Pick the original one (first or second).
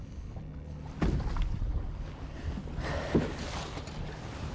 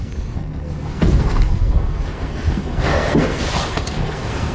first